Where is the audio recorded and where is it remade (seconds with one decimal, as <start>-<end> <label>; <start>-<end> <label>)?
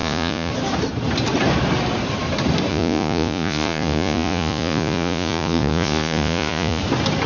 0.0-0.5 remade; 0.5-2.7 recorded; 2.7-6.8 remade; 6.8-7.3 recorded